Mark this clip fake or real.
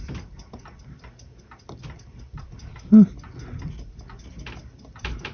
real